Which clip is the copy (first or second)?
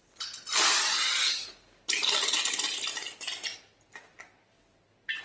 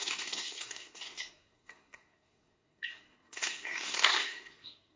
second